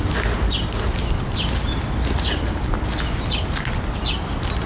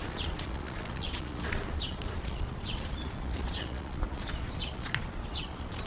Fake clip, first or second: second